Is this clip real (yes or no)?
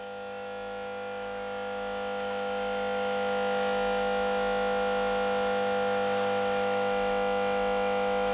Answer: no